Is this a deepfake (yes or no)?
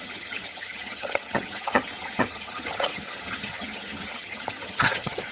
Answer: yes